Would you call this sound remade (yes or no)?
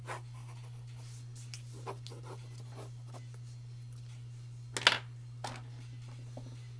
no